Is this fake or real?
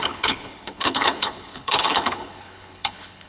fake